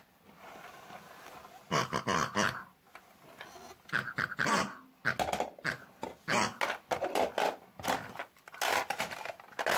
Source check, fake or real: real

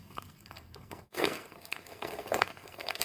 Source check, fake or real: fake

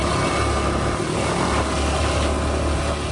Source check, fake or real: real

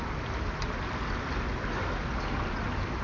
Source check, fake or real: real